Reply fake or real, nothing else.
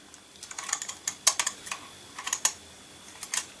real